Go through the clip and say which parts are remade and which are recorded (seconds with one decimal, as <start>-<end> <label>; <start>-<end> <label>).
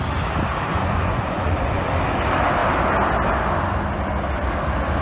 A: 0.0-0.7 recorded; 0.7-1.8 remade; 1.8-5.0 recorded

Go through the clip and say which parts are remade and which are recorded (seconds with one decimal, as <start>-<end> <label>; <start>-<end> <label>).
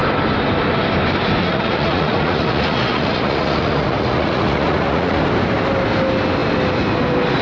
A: 0.0-1.4 recorded; 1.4-5.2 remade; 5.2-7.4 recorded